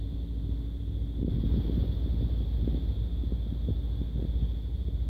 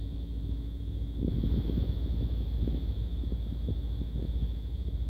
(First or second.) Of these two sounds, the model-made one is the second